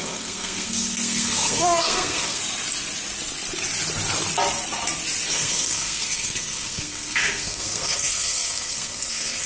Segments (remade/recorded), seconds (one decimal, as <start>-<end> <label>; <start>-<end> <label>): 0.0-2.4 remade; 2.4-5.3 recorded; 5.3-9.5 remade